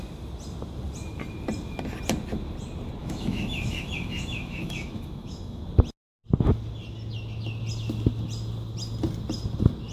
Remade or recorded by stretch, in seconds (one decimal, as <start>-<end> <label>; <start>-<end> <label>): 0.0-3.0 recorded; 3.0-5.6 remade; 5.6-9.9 recorded